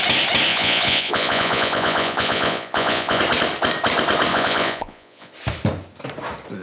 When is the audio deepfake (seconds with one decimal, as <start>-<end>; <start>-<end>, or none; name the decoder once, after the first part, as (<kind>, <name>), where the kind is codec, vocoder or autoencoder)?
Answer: 0.5-3.2 (vocoder, Vocos); 4.3-5.3